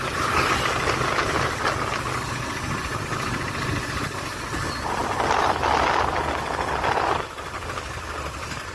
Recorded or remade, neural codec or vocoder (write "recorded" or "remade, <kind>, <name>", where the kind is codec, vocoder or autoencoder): recorded